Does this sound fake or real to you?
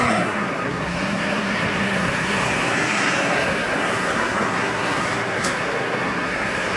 fake